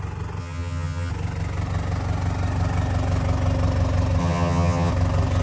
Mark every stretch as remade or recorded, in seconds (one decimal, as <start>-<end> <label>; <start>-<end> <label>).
0.0-0.4 recorded; 0.4-1.1 remade; 1.1-4.2 recorded; 4.2-4.9 remade; 4.9-5.4 recorded